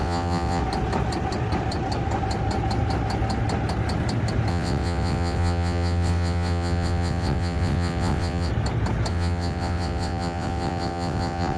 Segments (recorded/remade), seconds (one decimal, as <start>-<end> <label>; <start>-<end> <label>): 0.0-0.6 remade; 0.6-4.5 recorded; 4.5-8.5 remade; 8.5-9.1 recorded; 9.1-11.6 remade